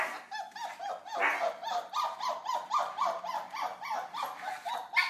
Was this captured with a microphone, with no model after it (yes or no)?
yes